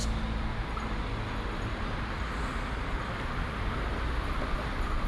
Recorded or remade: recorded